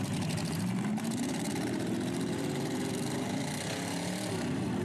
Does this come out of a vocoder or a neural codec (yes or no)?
yes